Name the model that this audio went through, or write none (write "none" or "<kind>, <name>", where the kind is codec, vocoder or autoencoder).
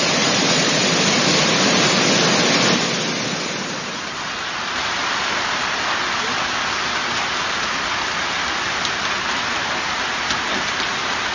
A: none